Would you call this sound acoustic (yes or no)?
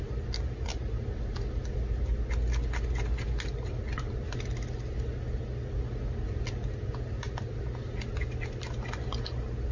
yes